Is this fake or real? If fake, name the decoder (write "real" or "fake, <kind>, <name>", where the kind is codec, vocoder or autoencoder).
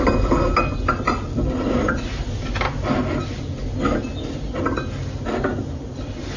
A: real